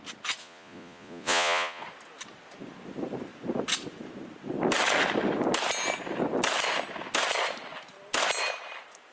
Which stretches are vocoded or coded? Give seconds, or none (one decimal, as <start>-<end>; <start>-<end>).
0.4-1.8